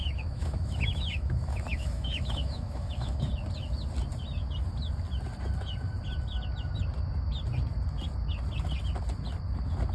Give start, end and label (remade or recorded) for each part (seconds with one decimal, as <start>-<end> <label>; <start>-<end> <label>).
0.0-3.3 remade; 3.3-9.9 recorded